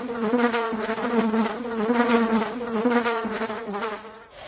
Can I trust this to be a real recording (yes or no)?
no